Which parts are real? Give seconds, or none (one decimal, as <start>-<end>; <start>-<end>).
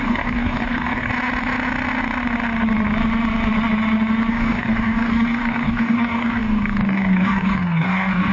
1.1-4.3